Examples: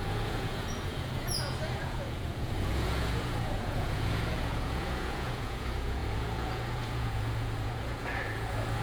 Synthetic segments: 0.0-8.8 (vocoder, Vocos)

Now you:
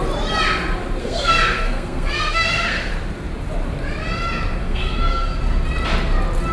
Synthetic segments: 1.0-2.9 (codec, SNAC); 4.6-5.4

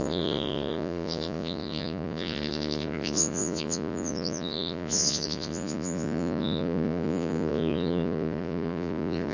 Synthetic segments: 0.0-9.3 (vocoder, Vocos)